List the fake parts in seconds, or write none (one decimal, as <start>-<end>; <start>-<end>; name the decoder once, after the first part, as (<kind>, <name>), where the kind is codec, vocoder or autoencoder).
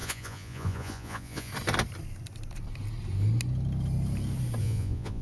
0.0-1.5 (vocoder, Vocos); 4.6-5.2